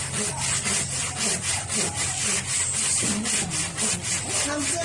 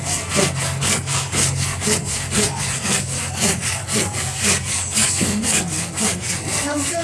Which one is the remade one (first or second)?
second